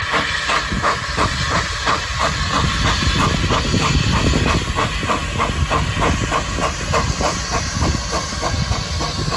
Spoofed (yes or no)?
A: no